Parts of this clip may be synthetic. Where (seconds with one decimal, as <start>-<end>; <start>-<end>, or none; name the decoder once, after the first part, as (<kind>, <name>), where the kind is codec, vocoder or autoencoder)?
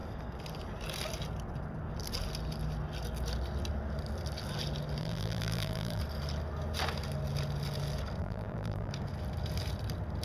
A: 5.0-6.0 (vocoder, BigVGAN v2); 8.2-8.9